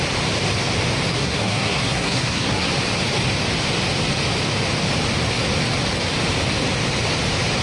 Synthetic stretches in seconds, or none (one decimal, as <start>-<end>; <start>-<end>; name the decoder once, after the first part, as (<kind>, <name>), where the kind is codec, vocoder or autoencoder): 1.1-2.7 (codec, SNAC)